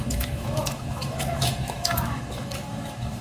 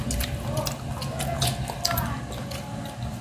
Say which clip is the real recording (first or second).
second